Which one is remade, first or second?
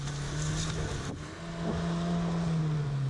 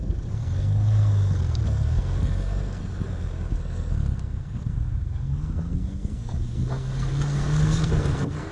second